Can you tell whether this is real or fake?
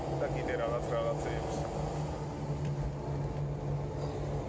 real